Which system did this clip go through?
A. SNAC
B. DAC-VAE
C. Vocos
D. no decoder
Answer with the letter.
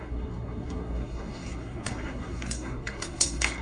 A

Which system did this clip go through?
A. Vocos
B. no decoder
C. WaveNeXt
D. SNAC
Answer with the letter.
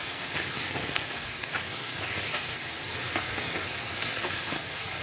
D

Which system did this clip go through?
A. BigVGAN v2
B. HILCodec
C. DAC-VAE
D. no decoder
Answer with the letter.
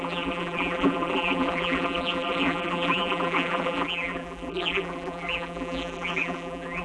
A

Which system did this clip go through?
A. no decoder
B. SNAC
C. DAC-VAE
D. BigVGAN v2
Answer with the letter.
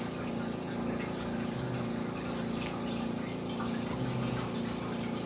A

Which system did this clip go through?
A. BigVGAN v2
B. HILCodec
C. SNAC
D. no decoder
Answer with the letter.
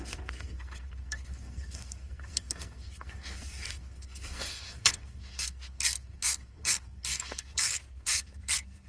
C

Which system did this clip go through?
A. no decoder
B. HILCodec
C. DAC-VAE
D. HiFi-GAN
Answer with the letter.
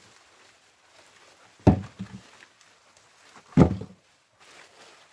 A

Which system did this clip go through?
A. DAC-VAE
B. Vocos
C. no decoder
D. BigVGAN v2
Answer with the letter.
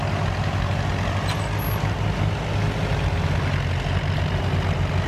C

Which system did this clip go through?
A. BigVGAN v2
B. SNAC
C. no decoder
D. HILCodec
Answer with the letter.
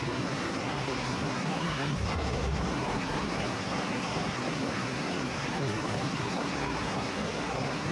B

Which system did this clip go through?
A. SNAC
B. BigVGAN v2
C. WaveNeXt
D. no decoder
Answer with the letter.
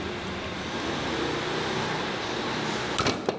D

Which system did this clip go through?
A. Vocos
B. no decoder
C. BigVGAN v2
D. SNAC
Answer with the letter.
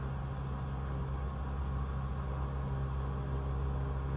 B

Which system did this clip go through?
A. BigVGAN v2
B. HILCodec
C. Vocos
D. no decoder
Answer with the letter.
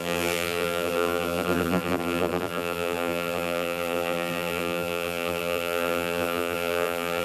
A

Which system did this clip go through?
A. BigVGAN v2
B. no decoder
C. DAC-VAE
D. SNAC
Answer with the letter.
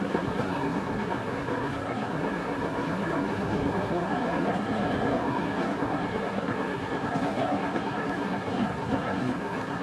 D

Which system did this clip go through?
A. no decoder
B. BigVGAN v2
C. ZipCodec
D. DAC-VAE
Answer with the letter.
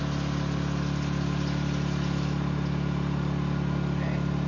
A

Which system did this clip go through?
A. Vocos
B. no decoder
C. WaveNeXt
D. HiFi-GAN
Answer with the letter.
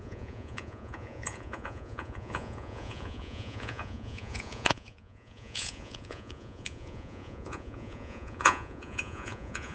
A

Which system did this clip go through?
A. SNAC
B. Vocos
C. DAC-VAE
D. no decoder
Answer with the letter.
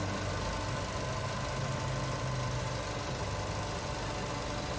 D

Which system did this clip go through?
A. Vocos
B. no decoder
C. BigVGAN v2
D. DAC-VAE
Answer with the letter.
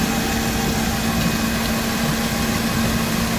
B